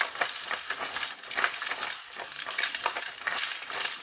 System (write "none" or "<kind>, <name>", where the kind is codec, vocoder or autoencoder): none